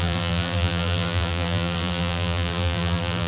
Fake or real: fake